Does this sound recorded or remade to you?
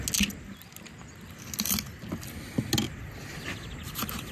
recorded